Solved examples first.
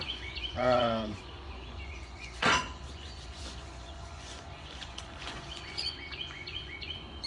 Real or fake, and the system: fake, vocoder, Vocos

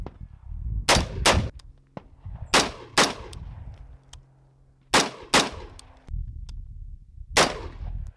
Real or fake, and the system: real